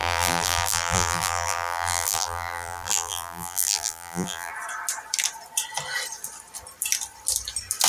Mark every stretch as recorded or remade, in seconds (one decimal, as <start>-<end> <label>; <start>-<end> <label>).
0.0-4.5 remade; 4.5-7.9 recorded